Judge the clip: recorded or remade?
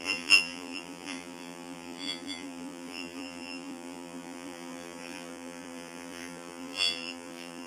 remade